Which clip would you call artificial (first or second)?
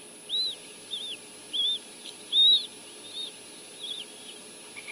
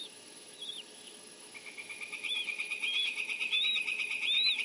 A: second